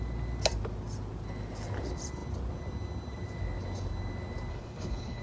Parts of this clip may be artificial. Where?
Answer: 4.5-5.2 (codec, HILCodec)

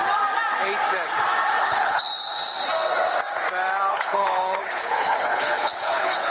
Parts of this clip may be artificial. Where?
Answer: 1.6-2.1 (codec, HILCodec); 3.9-6.3